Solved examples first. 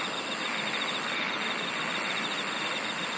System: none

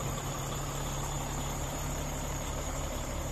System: vocoder, BigVGAN v2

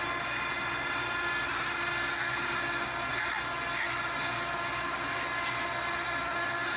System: none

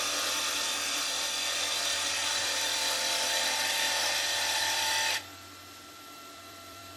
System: vocoder, BigVGAN v2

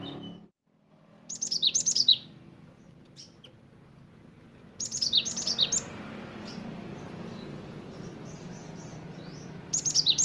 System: none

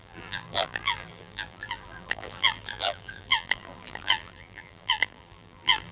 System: vocoder, BigVGAN v2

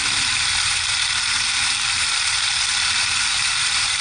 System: vocoder, BigVGAN v2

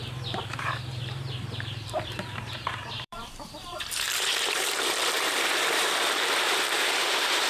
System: vocoder, BigVGAN v2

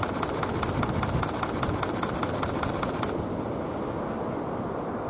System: none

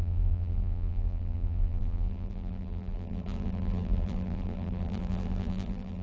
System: vocoder, BigVGAN v2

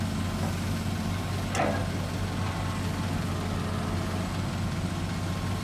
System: none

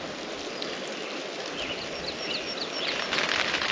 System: vocoder, BigVGAN v2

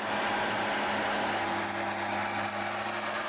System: none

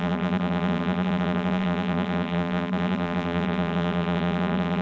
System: vocoder, BigVGAN v2